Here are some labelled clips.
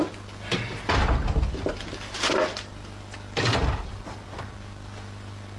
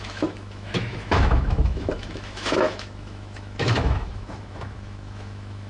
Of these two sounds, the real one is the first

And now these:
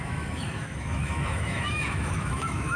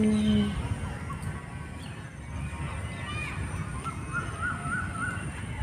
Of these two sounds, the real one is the second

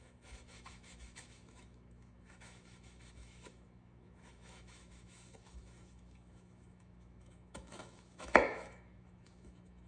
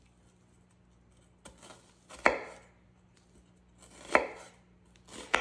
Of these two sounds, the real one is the second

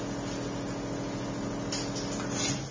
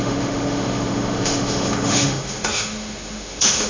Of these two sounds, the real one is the first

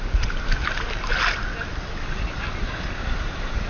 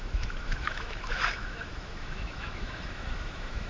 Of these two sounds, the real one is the first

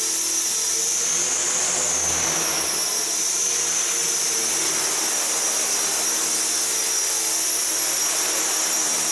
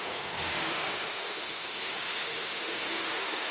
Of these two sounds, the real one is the first